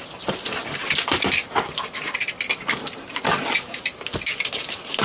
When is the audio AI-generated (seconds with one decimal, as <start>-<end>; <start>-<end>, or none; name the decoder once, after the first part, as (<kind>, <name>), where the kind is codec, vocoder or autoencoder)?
none